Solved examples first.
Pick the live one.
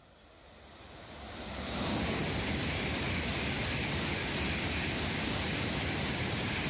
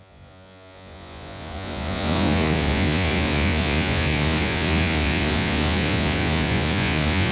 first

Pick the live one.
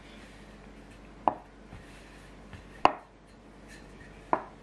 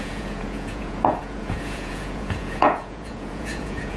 first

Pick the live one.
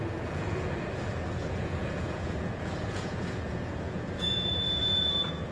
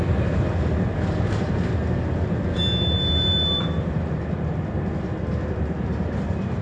second